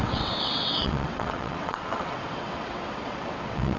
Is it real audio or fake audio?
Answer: fake